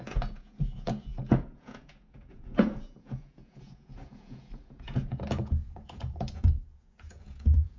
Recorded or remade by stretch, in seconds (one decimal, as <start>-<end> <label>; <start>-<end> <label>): 0.0-7.8 remade